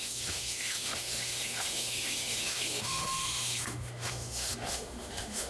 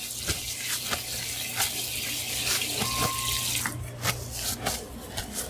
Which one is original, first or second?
second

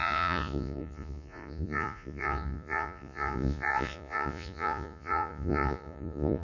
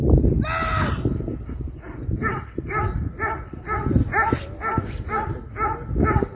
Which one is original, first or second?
second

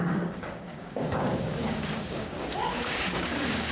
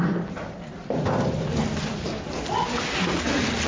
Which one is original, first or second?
second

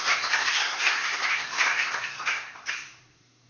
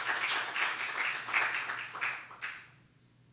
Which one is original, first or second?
second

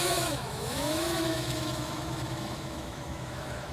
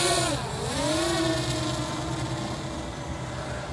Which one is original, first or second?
second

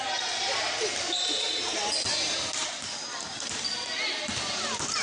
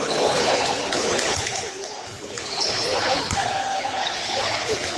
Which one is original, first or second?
first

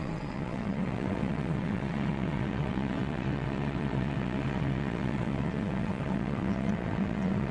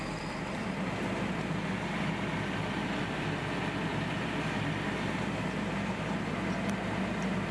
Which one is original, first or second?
second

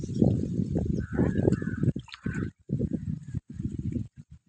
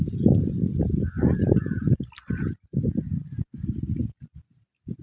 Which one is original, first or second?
second